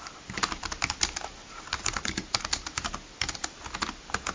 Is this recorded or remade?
recorded